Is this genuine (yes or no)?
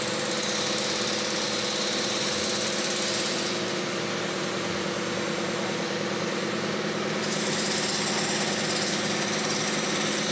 yes